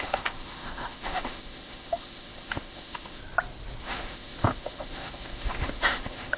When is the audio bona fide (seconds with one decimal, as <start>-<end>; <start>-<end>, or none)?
3.2-3.8